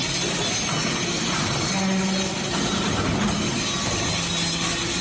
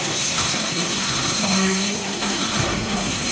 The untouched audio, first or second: first